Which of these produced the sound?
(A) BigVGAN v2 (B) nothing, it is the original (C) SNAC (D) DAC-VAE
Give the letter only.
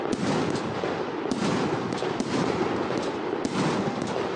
B